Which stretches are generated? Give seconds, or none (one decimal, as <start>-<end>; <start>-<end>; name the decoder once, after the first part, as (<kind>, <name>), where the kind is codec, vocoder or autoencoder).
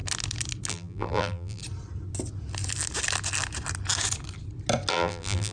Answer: 0.7-1.6 (vocoder, BigVGAN v2); 4.9-5.5